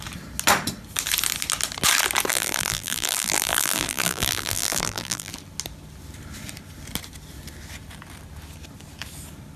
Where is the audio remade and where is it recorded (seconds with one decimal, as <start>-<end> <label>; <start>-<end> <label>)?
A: 0.0-2.3 recorded; 2.3-5.3 remade; 5.3-9.6 recorded

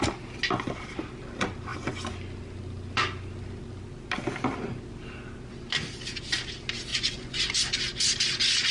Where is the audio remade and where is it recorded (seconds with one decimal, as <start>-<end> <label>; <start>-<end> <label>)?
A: 0.0-6.9 recorded; 6.9-7.4 remade; 7.4-8.7 recorded

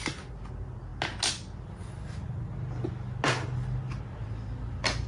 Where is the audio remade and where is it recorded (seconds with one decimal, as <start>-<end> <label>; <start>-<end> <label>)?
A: 0.0-5.1 recorded

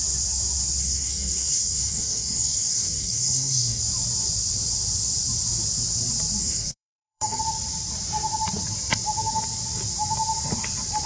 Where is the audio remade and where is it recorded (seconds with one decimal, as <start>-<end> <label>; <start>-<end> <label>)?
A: 0.0-0.8 recorded; 0.8-3.8 remade; 3.8-6.4 recorded; 6.4-7.4 remade; 7.4-11.1 recorded

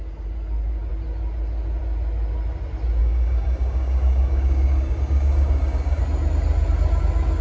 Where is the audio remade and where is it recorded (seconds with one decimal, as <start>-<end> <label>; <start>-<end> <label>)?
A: 0.0-3.0 recorded; 3.0-6.0 remade; 6.0-7.4 recorded

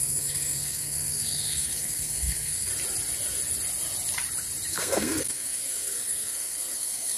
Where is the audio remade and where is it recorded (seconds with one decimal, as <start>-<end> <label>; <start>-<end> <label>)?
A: 0.0-2.7 remade; 2.7-4.7 recorded; 4.7-7.2 remade

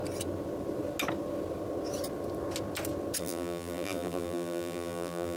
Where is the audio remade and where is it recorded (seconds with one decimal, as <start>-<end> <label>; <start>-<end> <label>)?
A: 0.0-3.2 recorded; 3.2-5.4 remade